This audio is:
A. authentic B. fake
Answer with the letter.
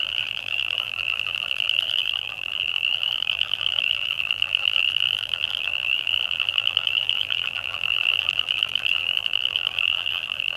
B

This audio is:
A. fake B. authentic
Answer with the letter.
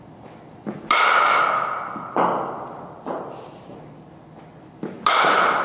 B